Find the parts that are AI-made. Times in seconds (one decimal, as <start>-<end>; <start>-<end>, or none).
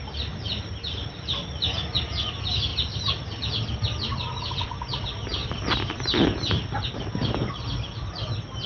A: none